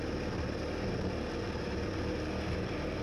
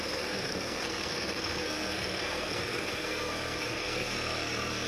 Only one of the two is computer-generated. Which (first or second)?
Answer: second